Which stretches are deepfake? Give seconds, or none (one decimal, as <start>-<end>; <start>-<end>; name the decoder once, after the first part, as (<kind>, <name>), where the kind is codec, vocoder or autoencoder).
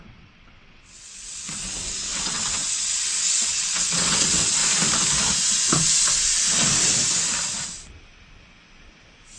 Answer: 0.0-4.6 (vocoder, WaveNeXt)